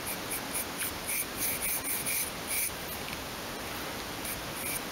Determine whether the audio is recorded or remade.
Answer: recorded